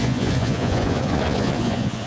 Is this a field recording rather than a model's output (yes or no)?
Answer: no